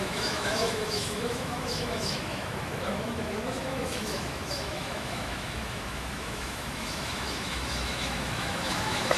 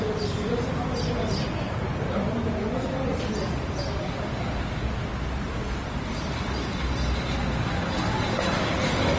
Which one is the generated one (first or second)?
first